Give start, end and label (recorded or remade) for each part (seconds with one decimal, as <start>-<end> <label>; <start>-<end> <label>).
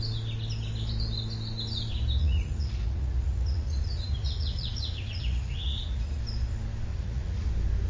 0.0-2.2 recorded; 2.2-6.2 remade; 6.2-6.9 recorded; 6.9-7.5 remade; 7.5-7.9 recorded